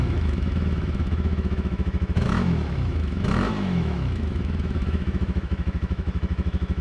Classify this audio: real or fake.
fake